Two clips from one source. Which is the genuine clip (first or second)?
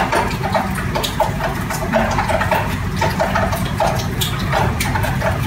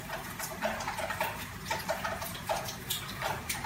first